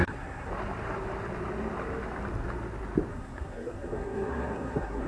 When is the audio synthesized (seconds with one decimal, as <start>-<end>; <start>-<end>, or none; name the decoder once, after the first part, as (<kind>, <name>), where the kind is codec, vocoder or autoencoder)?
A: 0.0-0.5 (codec, SNAC); 3.1-5.1